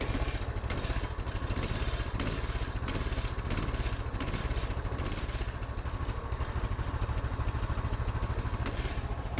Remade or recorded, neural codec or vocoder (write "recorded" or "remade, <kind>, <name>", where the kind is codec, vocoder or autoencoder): recorded